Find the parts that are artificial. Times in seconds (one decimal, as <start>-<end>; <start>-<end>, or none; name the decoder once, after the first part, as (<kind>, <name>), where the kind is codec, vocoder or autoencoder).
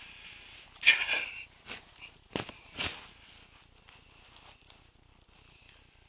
none